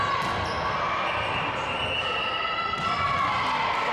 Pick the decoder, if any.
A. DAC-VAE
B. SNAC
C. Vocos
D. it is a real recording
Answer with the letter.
D